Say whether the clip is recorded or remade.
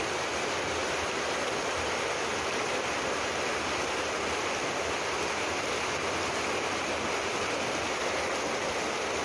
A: recorded